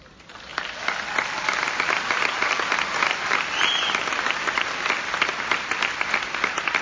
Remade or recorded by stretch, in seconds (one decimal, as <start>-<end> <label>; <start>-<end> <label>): 0.0-6.8 recorded